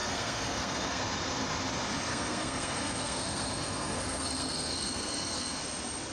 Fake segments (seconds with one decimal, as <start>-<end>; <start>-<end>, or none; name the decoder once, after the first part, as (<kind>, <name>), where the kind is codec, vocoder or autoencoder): 0.0-1.0 (codec, SNAC); 2.1-5.6